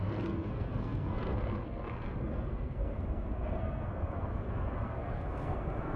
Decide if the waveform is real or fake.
fake